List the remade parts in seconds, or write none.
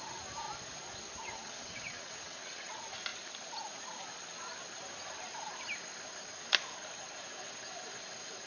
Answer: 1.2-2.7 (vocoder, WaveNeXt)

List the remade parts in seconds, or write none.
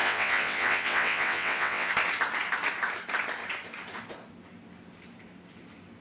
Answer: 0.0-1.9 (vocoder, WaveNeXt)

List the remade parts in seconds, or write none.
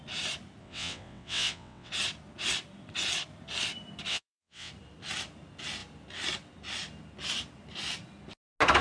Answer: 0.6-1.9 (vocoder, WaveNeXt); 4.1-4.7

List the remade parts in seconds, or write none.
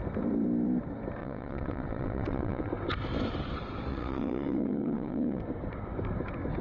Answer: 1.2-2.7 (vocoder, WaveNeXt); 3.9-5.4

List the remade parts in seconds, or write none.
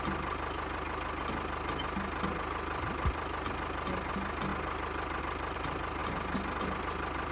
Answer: none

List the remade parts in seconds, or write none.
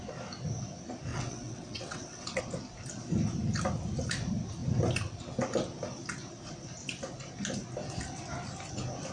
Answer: 1.1-2.4 (vocoder, WaveNeXt)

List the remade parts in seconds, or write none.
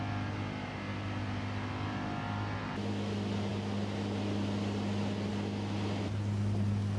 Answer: none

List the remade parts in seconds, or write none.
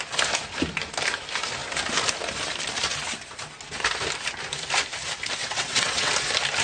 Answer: 5.4-6.1 (vocoder, WaveNeXt)